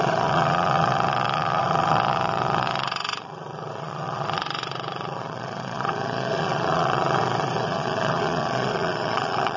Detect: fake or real fake